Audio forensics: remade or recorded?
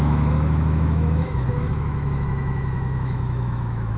remade